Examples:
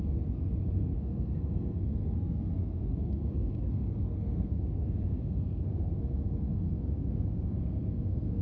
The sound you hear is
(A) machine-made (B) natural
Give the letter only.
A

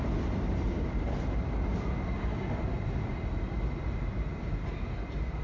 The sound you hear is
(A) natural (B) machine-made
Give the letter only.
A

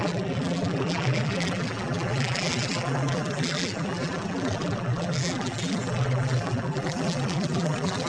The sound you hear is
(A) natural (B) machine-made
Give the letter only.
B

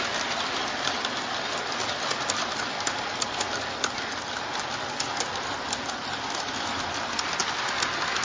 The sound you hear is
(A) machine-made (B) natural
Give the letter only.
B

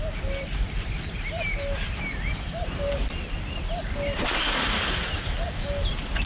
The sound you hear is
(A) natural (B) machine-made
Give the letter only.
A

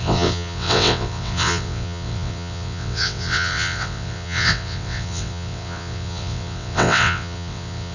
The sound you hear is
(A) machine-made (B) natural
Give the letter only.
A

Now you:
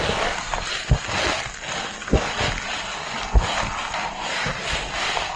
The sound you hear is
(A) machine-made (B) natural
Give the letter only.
B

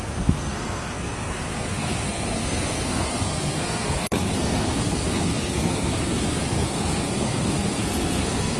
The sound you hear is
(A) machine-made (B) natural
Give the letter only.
A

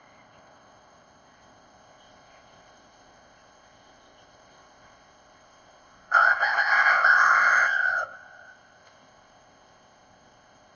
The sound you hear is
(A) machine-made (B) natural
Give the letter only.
A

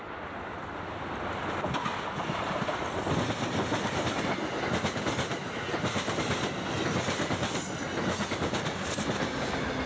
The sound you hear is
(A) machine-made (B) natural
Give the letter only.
B